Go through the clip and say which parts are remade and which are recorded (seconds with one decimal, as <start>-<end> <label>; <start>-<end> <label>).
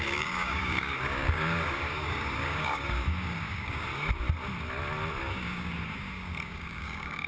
0.0-3.9 remade; 3.9-5.2 recorded; 5.2-7.3 remade